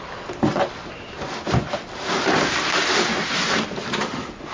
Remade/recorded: recorded